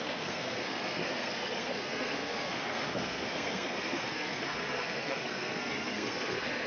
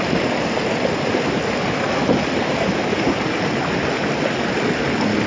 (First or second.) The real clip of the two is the second